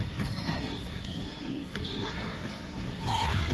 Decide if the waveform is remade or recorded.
remade